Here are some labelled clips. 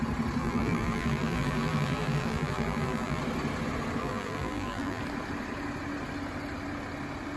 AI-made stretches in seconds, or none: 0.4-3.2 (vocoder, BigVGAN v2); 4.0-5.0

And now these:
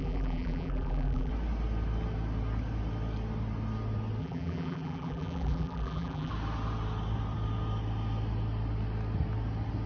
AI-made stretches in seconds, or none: 0.0-1.3 (vocoder, BigVGAN v2); 4.2-6.3

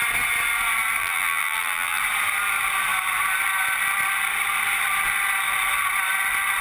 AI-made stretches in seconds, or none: 1.0-2.0 (vocoder, BigVGAN v2)